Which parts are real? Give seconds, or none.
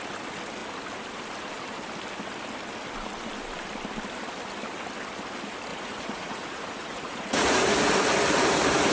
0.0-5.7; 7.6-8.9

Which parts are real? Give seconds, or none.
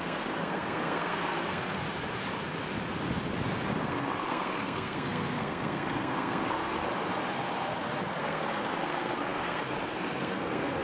1.8-3.8; 6.9-8.2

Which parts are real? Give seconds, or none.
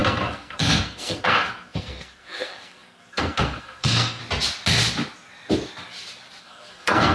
4.2-6.4